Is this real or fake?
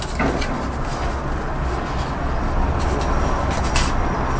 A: real